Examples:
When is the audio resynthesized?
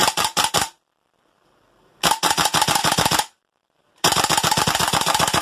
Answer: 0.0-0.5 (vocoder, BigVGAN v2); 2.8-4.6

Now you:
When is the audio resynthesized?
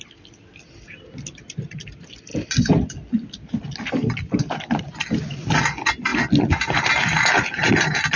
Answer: none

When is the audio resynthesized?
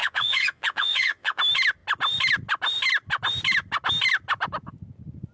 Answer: 0.0-1.4 (vocoder, Vocos)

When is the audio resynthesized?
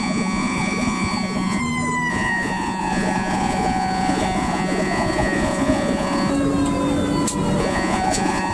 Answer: 0.0-1.6 (vocoder, Vocos); 2.1-6.3; 7.6-8.5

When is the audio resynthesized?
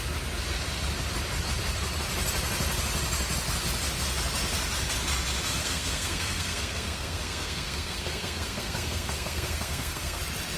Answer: 5.6-10.2 (codec, SNAC)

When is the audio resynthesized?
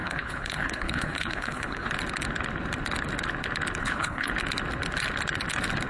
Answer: 0.0-1.9 (codec, HILCodec); 3.8-4.3